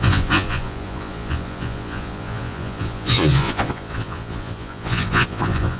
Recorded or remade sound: remade